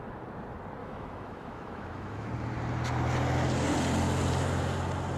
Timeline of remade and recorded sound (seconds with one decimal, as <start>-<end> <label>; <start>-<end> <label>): 0.0-0.8 recorded; 0.8-2.3 remade; 2.3-5.2 recorded